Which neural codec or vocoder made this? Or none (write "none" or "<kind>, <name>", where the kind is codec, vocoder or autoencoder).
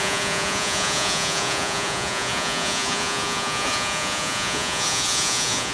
vocoder, Vocos